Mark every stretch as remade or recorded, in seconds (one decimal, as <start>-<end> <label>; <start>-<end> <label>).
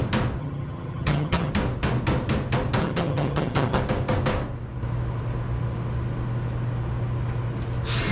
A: 0.0-0.4 recorded; 0.4-1.5 remade; 1.5-2.8 recorded; 2.8-3.8 remade; 3.8-8.1 recorded